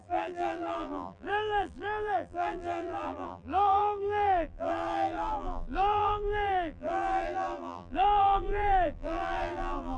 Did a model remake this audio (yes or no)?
yes